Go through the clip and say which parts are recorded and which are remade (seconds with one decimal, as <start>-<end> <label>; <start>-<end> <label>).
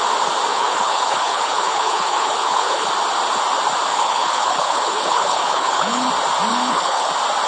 0.0-0.5 recorded; 0.5-2.9 remade; 2.9-3.9 recorded; 3.9-6.1 remade; 6.1-6.5 recorded; 6.5-7.1 remade; 7.1-7.5 recorded